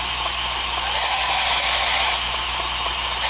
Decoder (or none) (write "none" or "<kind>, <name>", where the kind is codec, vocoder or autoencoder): none